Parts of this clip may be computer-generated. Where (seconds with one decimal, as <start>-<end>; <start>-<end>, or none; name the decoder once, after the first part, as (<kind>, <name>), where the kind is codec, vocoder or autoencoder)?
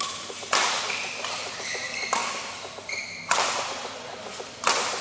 2.2-5.0 (vocoder, BigVGAN v2)